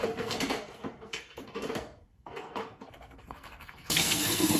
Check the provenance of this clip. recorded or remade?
remade